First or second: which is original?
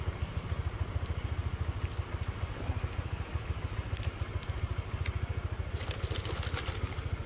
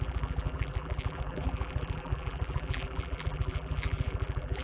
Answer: first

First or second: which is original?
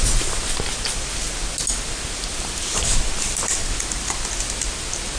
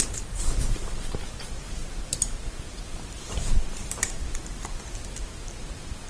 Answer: first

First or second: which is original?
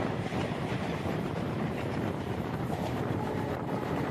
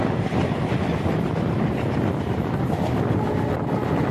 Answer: second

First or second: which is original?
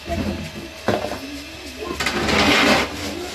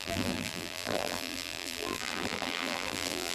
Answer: first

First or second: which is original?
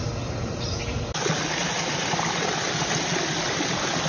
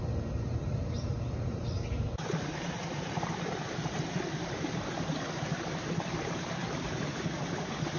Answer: first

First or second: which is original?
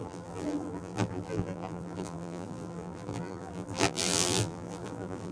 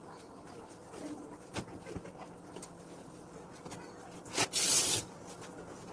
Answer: second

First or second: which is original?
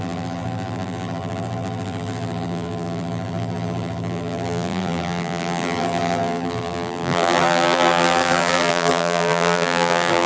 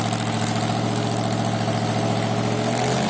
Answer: second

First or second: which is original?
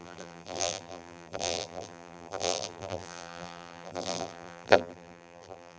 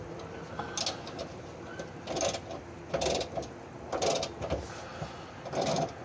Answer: second